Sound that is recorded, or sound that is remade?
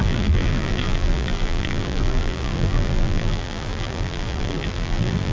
remade